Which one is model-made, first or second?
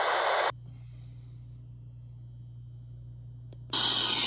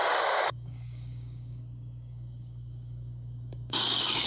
second